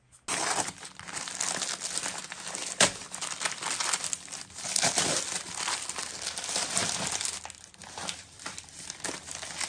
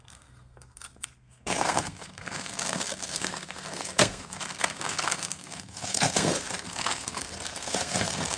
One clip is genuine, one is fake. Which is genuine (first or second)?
first